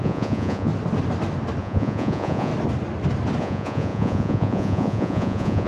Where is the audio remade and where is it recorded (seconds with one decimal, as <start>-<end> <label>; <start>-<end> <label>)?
0.0-0.7 remade; 0.7-1.6 recorded; 1.6-2.5 remade; 2.5-3.4 recorded; 3.4-5.7 remade